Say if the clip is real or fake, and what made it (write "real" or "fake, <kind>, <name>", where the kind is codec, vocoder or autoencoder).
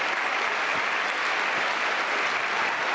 real